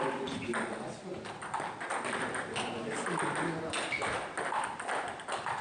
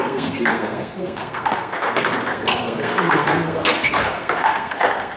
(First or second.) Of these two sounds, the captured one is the first